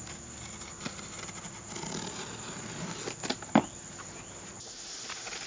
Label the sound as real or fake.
real